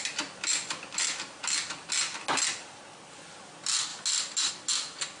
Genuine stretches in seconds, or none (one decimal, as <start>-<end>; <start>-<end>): 0.0-5.2